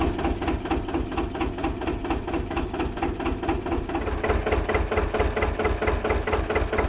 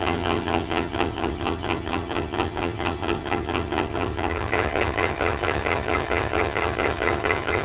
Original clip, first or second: first